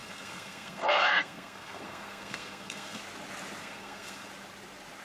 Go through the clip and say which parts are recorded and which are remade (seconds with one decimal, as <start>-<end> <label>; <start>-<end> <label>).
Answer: 0.0-3.0 remade; 3.0-3.6 recorded; 3.6-4.3 remade; 4.3-5.0 recorded